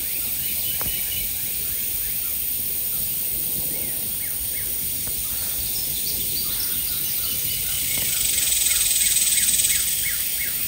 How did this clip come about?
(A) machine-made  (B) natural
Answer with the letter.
B